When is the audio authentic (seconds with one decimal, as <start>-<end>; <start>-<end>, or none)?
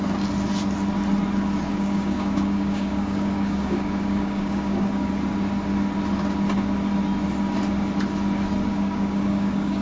0.0-1.7; 5.1-8.7